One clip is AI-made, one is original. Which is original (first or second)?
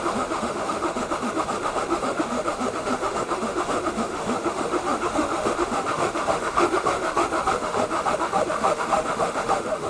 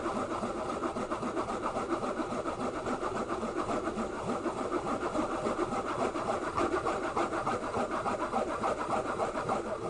second